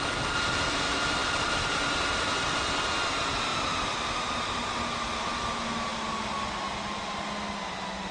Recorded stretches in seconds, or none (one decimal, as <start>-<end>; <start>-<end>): 0.0-8.1